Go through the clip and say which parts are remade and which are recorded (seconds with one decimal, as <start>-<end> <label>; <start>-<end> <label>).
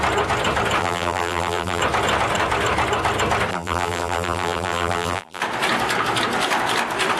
0.0-0.8 recorded; 0.8-1.8 remade; 1.8-3.5 recorded; 3.5-5.4 remade; 5.4-7.2 recorded